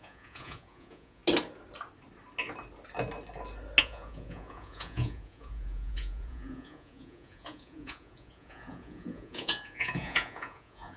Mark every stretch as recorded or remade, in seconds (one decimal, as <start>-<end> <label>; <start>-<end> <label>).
0.0-1.2 remade; 1.2-3.8 recorded; 3.8-11.0 remade